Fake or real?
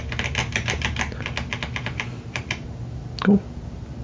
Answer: real